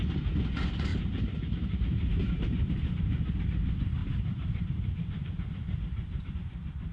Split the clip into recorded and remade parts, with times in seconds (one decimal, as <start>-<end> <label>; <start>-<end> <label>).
0.0-0.9 recorded; 0.9-3.4 remade; 3.4-4.0 recorded; 4.0-6.3 remade; 6.3-6.9 recorded